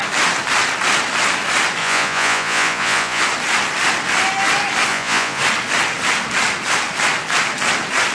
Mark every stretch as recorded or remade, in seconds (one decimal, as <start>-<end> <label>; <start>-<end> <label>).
0.0-1.8 recorded; 1.8-3.2 remade; 3.2-4.9 recorded; 4.9-5.4 remade; 5.4-8.1 recorded